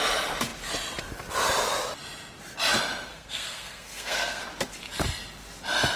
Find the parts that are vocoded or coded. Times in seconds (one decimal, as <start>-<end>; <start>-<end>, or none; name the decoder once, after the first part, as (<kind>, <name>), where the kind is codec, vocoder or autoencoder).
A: 3.1-4.4 (codec, SNAC)